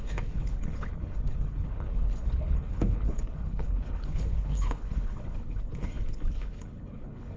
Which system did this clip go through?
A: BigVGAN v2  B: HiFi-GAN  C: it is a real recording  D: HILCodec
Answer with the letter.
D